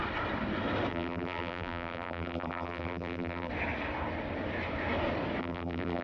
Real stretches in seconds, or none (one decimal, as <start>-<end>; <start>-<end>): 0.0-0.9; 3.5-5.4